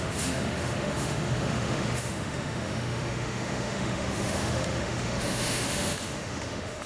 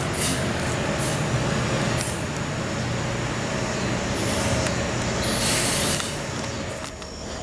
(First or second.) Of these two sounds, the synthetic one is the first